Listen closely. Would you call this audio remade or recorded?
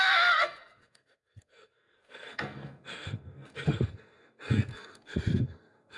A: remade